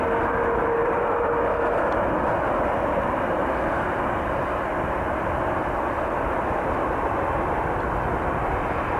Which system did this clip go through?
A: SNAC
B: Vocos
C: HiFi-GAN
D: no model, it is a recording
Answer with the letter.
D